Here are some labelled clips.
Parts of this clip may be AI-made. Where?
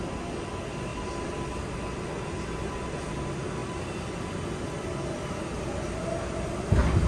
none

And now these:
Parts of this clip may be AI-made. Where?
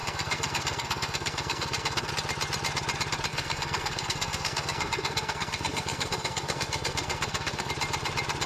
0.0-2.1 (codec, SNAC); 3.3-7.7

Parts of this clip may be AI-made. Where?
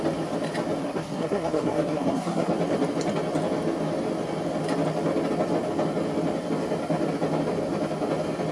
0.8-2.5 (codec, SNAC)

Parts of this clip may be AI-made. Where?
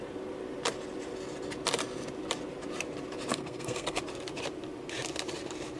3.3-4.0 (codec, SNAC)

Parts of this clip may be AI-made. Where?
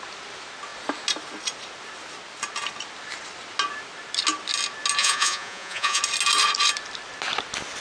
5.0-6.0 (vocoder, Vocos)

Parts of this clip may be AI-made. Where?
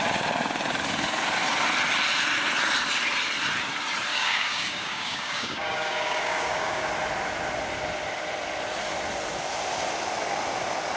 4.1-6.9 (codec, DAC)